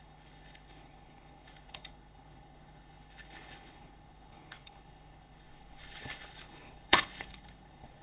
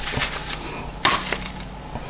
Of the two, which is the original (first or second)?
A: second